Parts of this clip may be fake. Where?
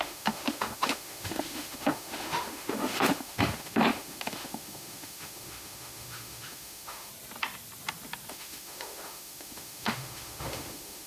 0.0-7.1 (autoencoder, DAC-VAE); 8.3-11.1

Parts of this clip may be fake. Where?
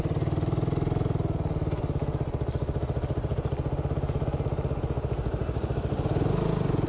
none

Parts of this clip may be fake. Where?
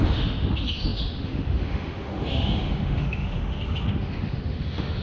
0.0-5.0 (autoencoder, DAC-VAE)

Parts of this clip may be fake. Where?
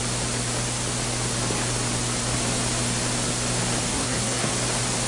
3.9-4.5 (codec, SNAC)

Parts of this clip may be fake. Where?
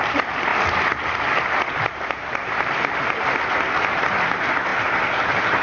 none